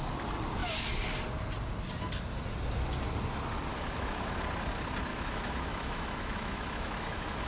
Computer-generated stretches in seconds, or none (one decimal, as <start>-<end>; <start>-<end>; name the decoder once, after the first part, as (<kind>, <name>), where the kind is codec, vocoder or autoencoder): 3.7-4.3 (autoencoder, DAC-VAE); 5.1-7.5